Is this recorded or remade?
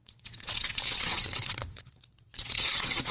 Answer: remade